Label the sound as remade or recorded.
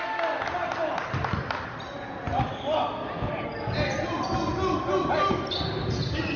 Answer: recorded